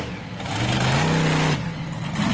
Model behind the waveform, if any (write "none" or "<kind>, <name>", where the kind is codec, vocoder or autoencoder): none